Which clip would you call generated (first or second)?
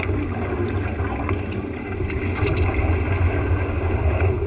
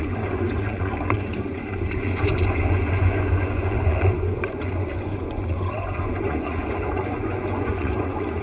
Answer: second